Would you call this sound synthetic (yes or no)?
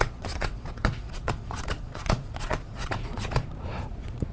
yes